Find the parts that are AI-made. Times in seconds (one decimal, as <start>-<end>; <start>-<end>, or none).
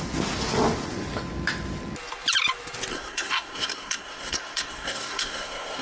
2.9-5.8